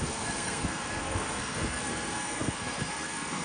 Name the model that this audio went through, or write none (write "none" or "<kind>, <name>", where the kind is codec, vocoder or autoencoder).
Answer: codec, SNAC